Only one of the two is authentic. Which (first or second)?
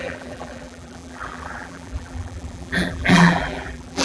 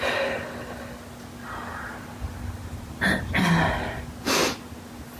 second